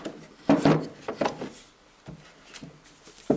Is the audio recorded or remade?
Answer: recorded